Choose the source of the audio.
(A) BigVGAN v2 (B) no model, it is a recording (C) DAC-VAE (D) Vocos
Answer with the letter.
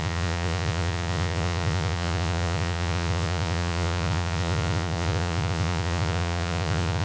D